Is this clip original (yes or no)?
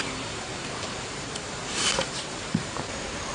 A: no